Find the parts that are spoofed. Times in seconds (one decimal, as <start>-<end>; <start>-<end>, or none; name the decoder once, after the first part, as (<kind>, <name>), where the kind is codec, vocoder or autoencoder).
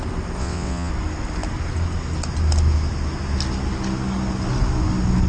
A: 0.4-0.9 (vocoder, WaveNeXt)